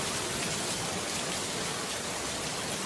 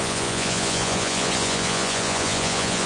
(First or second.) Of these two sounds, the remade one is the second